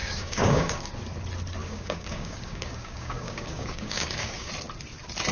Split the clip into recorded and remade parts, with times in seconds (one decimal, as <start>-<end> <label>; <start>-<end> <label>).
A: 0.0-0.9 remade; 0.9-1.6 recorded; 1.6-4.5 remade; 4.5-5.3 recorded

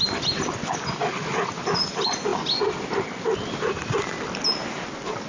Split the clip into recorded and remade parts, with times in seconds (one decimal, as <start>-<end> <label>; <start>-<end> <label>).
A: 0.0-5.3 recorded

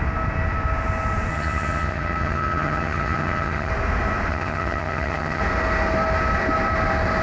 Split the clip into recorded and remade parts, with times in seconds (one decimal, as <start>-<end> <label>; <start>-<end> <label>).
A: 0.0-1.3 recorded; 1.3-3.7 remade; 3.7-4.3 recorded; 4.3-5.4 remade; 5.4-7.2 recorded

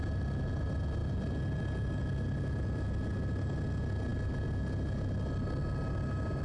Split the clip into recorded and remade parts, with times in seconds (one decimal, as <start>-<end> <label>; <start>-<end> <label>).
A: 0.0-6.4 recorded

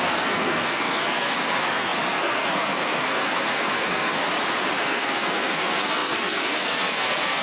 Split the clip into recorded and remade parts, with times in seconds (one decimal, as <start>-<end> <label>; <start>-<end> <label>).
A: 0.0-4.3 remade; 4.3-4.8 recorded; 4.8-7.4 remade